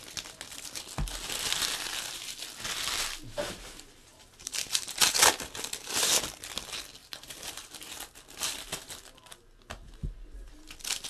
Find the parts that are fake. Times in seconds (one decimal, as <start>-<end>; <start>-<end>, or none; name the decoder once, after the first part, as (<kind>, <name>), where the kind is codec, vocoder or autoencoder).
4.1-5.2 (vocoder, BigVGAN v2); 7.0-7.9